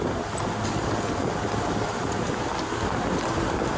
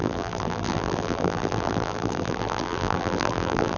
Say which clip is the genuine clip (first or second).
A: first